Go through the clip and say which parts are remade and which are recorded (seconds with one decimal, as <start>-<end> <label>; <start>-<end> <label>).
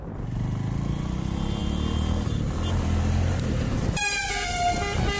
0.0-5.2 recorded